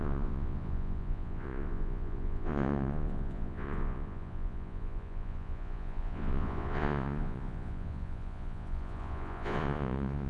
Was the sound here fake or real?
fake